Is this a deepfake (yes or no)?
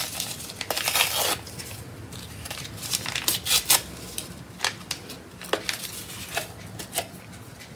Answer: no